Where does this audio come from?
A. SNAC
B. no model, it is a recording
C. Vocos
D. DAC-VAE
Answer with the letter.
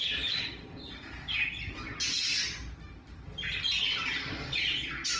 B